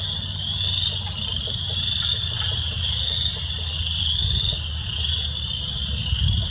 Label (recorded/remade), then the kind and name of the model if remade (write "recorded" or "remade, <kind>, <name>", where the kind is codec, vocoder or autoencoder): recorded